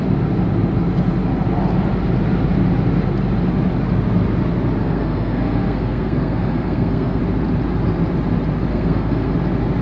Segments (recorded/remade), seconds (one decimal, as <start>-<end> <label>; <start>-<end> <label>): 0.0-4.8 recorded; 4.8-7.2 remade; 7.2-8.7 recorded; 8.7-9.3 remade; 9.3-9.8 recorded